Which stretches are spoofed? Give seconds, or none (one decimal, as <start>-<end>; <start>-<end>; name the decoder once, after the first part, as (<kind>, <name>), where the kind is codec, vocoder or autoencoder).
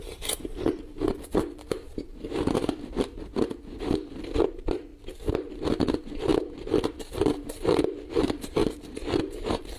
0.0-4.9 (vocoder, BigVGAN v2); 5.4-6.3; 6.9-8.6; 9.2-9.8